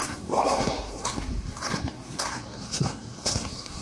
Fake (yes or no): yes